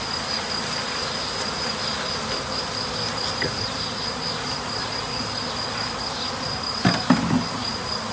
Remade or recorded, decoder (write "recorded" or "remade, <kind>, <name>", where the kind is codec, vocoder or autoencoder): recorded